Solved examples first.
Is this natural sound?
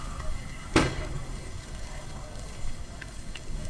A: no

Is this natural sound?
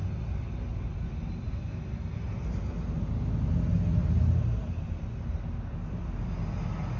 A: yes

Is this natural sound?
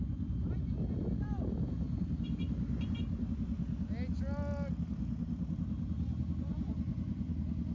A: yes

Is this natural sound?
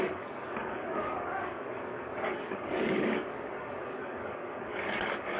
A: no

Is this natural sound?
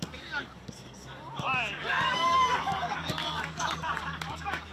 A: no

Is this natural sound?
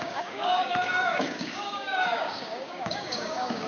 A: no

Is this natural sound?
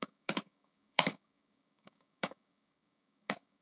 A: no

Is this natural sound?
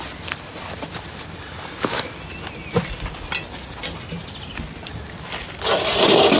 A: yes